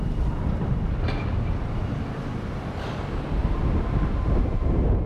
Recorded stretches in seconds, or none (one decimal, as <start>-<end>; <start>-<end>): 0.0-5.1